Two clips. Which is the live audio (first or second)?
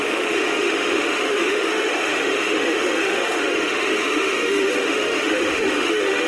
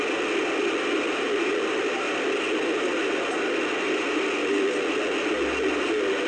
second